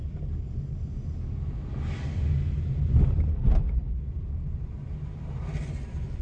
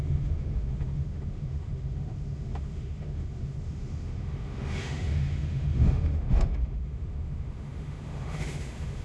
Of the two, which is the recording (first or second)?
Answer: first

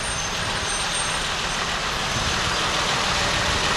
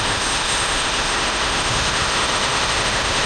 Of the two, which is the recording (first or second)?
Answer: first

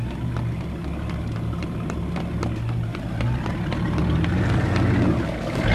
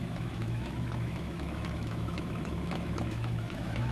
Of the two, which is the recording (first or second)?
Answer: first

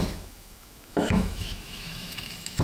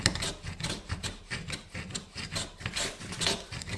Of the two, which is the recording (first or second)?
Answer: second